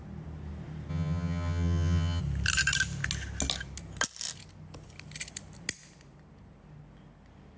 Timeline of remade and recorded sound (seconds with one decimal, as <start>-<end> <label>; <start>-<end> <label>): 0.0-0.9 recorded; 0.9-2.2 remade; 2.2-7.6 recorded